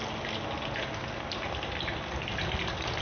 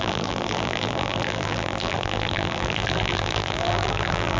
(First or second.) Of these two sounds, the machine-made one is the second